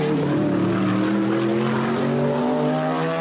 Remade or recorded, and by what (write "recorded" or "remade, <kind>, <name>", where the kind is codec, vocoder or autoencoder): recorded